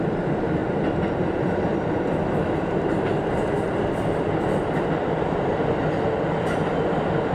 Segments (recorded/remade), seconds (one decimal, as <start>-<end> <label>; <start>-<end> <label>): 0.0-7.3 recorded